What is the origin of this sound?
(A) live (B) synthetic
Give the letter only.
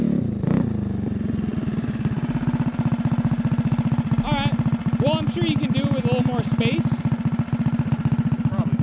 A